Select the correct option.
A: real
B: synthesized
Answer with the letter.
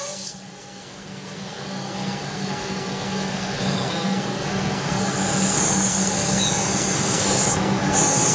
B